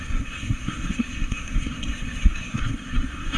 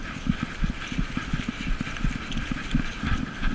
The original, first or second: second